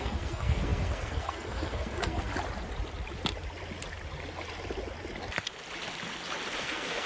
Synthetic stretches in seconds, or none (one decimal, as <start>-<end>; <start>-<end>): 0.0-2.3; 6.6-7.1